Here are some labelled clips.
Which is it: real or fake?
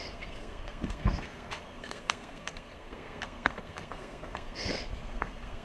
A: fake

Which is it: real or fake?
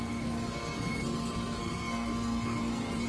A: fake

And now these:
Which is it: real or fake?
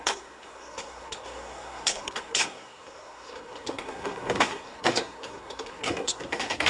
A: fake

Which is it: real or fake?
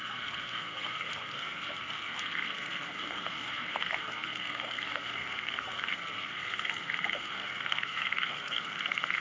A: fake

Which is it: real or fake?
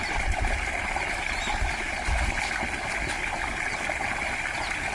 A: real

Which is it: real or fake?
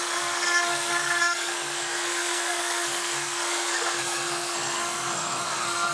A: fake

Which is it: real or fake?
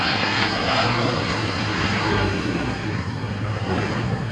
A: fake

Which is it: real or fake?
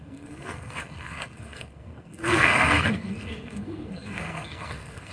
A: fake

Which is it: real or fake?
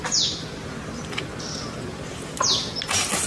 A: real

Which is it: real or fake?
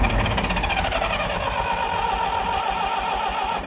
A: real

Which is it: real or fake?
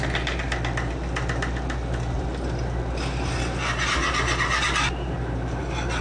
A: real